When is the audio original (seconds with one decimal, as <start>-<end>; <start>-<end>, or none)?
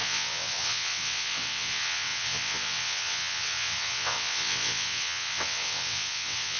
none